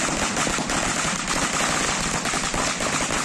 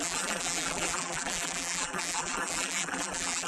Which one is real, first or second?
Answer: first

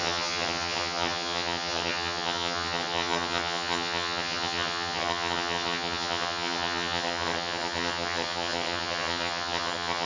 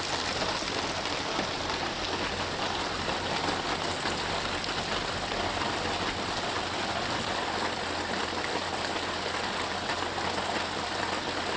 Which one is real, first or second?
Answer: second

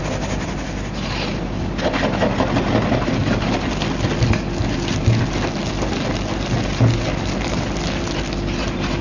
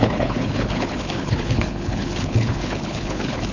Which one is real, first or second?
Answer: first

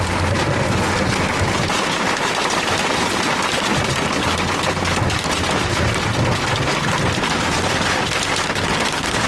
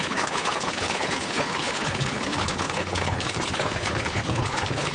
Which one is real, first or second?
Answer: first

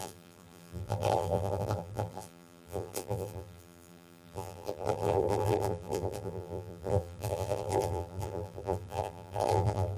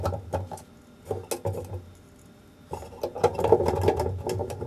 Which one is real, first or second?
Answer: second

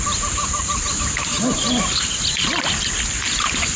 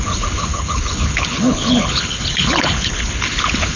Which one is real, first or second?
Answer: first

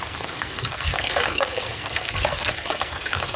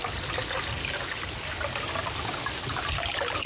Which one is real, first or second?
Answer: second